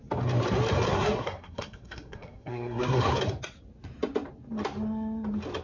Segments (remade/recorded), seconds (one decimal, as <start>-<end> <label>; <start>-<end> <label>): 0.0-0.9 recorded; 0.9-3.1 remade; 3.1-5.6 recorded